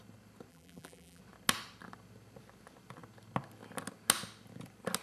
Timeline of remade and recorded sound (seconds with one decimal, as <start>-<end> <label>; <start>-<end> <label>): 0.0-0.5 recorded; 0.5-1.2 remade; 1.2-5.0 recorded